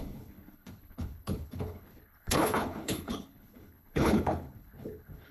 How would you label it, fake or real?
fake